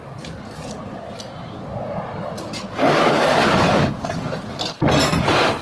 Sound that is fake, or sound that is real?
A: real